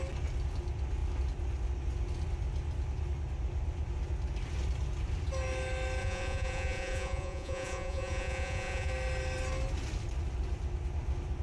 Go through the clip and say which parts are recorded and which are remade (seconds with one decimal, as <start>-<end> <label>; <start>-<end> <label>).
0.0-6.0 recorded; 6.0-8.9 remade; 8.9-11.4 recorded